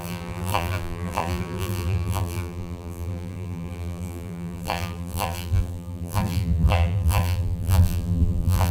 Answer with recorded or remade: remade